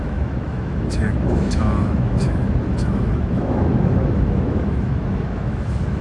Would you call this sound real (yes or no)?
no